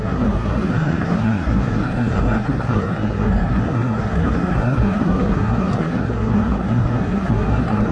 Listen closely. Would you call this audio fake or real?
fake